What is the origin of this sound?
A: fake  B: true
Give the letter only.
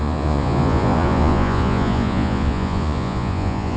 A